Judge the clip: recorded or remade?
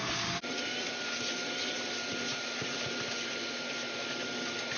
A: recorded